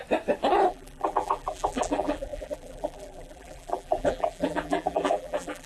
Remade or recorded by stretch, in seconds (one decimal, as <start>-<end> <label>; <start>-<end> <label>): 0.0-0.7 recorded; 0.7-5.7 remade